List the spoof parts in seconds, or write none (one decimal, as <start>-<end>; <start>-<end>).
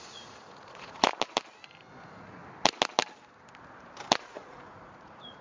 0.0-1.1; 1.9-2.4; 4.2-5.4